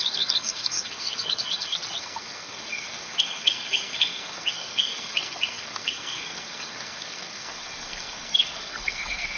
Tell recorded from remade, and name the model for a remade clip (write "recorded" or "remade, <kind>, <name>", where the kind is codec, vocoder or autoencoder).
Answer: remade, codec, SNAC